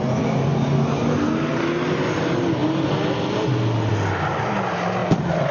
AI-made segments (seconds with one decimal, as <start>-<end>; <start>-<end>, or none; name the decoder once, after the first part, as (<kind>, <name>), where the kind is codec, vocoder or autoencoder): none